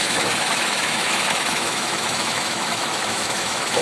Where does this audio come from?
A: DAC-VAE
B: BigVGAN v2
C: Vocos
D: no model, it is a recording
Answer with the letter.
A